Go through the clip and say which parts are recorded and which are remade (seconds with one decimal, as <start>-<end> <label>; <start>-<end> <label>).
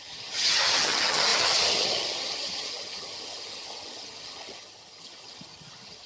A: 0.0-6.1 remade